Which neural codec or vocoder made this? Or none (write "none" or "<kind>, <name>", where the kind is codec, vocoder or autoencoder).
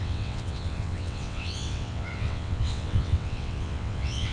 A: vocoder, WaveNeXt